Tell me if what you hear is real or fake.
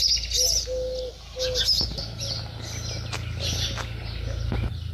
real